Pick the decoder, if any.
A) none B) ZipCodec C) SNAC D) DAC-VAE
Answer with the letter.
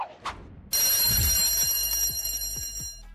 A